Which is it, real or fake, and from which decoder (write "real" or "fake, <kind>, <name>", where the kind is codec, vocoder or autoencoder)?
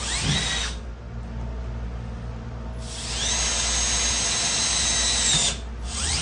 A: real